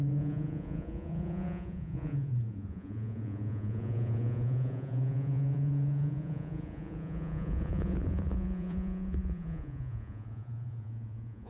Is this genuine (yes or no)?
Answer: no